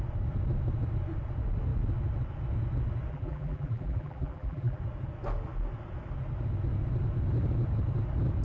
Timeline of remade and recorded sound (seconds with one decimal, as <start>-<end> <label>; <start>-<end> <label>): 0.0-3.1 recorded; 3.1-4.8 remade; 4.8-8.4 recorded